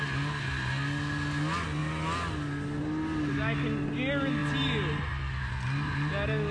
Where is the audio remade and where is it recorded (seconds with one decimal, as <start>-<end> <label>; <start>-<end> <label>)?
0.0-4.4 recorded; 4.4-5.5 remade; 5.5-6.5 recorded